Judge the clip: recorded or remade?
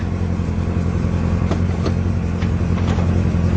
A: recorded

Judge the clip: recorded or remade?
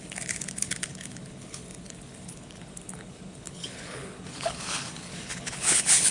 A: remade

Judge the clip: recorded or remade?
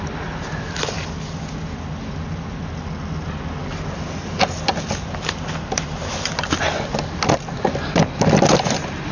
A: recorded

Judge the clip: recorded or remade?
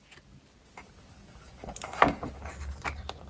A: recorded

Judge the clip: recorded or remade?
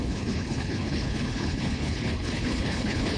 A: remade